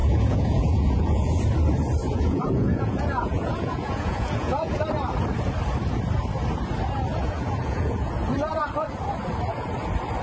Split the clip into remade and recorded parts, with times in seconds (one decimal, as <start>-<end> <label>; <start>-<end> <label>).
0.0-1.4 remade; 1.4-2.0 recorded; 2.0-4.8 remade; 4.8-7.2 recorded; 7.2-8.1 remade; 8.1-10.2 recorded